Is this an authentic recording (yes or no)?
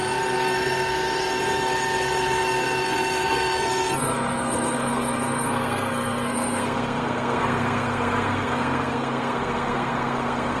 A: no